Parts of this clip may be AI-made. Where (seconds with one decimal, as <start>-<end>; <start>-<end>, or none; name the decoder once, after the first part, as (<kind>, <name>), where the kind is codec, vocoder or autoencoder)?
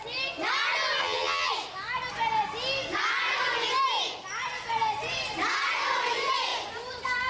1.0-1.5 (vocoder, HiFi-GAN)